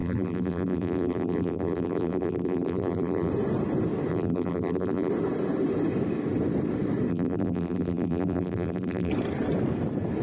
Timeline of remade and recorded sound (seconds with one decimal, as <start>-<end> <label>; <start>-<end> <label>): 0.0-3.3 remade; 3.3-4.1 recorded; 4.1-5.1 remade; 5.1-7.1 recorded; 7.1-9.1 remade; 9.1-10.2 recorded